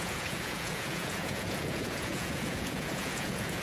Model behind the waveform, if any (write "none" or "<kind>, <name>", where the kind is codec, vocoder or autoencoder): vocoder, Vocos